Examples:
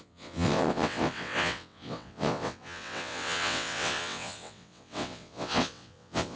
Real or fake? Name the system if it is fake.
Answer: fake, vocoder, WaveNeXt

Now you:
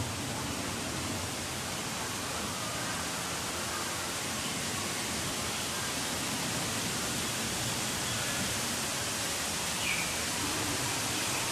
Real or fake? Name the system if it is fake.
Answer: real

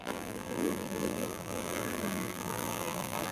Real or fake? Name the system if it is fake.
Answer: fake, vocoder, BigVGAN v2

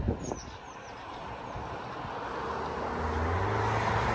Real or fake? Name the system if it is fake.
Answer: real